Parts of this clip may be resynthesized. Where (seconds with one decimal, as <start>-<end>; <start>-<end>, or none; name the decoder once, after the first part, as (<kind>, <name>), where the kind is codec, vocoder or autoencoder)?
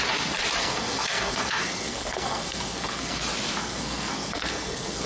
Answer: 0.6-3.2 (codec, SNAC); 3.6-5.1